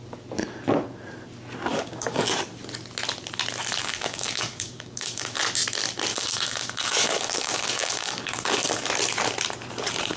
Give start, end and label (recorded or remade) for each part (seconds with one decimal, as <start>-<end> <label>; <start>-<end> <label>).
0.0-1.7 recorded; 1.7-2.5 remade; 2.5-3.8 recorded; 3.8-5.4 remade; 5.4-6.1 recorded; 6.1-8.9 remade; 8.9-10.2 recorded